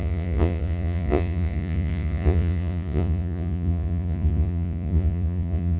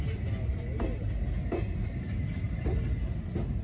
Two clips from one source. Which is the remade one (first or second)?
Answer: first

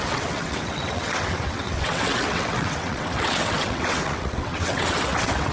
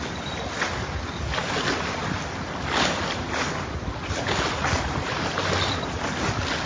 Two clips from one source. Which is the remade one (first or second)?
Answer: first